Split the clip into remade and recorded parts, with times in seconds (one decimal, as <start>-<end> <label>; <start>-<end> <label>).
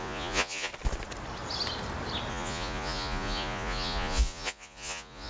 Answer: 0.0-0.7 remade; 0.7-2.3 recorded; 2.3-5.3 remade